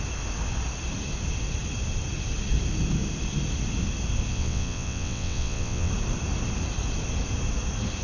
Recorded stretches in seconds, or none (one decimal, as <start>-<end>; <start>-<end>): 0.0-4.3; 5.9-8.0

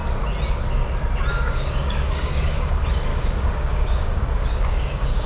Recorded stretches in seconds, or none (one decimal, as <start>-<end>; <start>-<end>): 0.0-1.3; 2.7-3.1

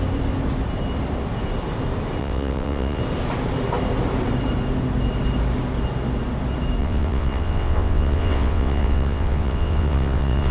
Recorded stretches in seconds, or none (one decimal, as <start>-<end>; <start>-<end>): 0.0-2.2; 3.0-6.8

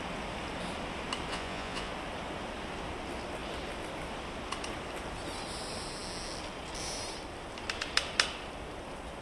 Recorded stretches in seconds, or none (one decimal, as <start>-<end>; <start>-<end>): 0.0-1.3; 1.9-9.2

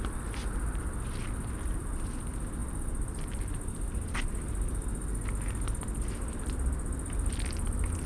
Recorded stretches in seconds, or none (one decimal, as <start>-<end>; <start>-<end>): 0.0-8.1

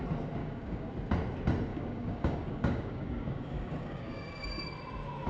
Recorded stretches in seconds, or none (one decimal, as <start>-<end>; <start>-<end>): 0.0-0.4; 0.9-1.7; 4.6-5.3

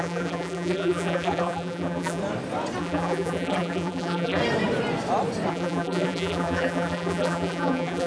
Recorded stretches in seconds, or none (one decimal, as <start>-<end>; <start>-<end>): 2.2-2.8; 4.4-5.5